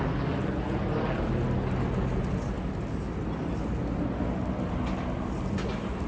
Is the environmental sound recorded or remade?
recorded